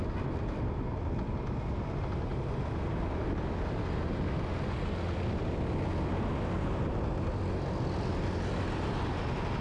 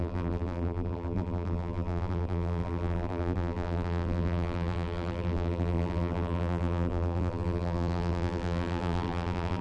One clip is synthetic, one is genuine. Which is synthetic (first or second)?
second